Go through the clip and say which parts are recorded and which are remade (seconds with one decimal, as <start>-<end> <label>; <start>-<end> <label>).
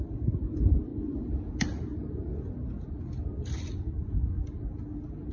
0.0-5.3 recorded